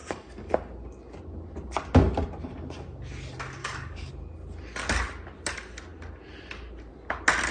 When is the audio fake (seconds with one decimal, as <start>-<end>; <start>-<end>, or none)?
0.0-0.5; 3.6-4.1

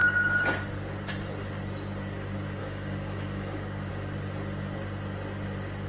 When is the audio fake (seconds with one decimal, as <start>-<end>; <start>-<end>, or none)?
2.6-3.9

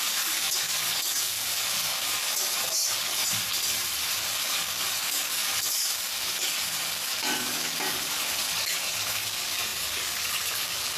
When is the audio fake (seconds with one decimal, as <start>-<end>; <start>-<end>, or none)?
0.0-3.2; 4.1-11.0

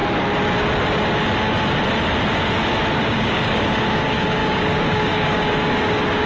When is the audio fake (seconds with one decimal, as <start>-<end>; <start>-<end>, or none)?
2.9-6.3

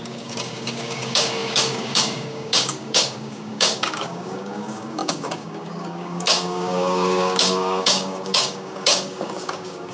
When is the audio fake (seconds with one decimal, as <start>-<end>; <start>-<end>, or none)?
0.0-9.9

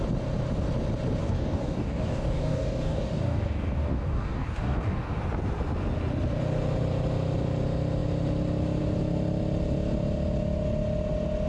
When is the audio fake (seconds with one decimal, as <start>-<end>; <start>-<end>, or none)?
1.2-5.2

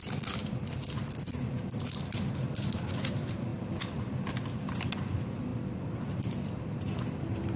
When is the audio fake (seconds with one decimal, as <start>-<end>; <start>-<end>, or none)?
none